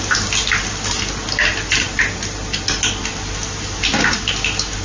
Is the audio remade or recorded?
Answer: recorded